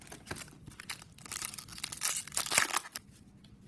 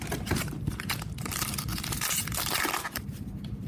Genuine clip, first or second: first